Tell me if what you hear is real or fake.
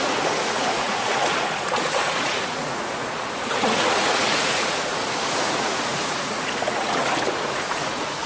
fake